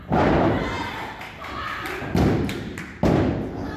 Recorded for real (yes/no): yes